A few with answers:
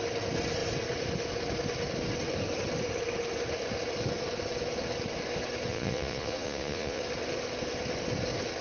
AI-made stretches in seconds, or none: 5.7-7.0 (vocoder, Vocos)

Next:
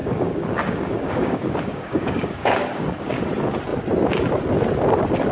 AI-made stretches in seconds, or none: 0.0-3.2 (codec, DAC)